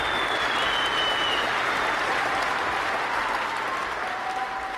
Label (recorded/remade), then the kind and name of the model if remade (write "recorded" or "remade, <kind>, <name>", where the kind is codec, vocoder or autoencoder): recorded